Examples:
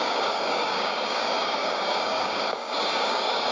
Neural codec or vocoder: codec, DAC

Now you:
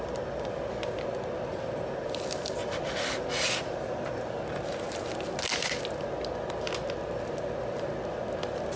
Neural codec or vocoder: none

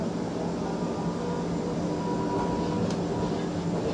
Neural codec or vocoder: none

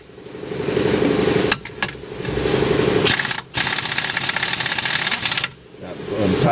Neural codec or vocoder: none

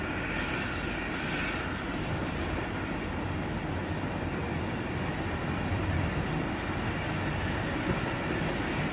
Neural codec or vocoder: none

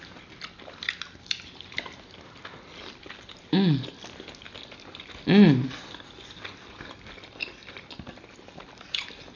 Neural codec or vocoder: none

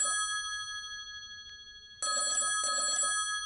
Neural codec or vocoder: none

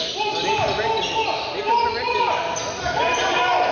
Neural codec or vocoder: none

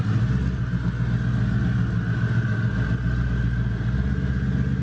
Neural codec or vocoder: none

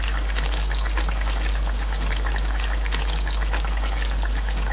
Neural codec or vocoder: codec, DAC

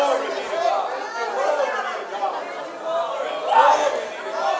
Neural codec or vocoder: none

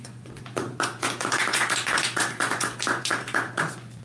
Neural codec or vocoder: vocoder, Vocos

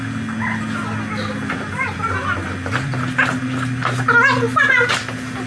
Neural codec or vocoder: none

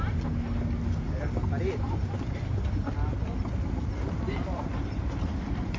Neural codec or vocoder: none